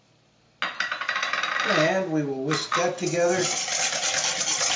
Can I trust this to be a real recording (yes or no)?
yes